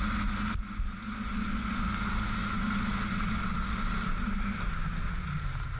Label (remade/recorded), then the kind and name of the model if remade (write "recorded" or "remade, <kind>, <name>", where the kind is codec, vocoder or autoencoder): recorded